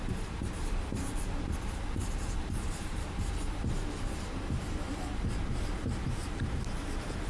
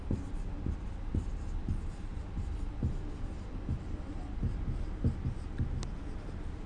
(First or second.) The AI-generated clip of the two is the first